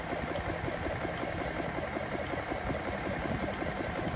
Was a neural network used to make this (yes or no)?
no